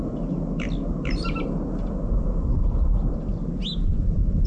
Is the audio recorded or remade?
recorded